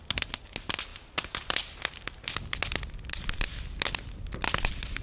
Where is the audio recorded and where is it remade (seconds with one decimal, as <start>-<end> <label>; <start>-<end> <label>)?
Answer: 0.0-5.0 recorded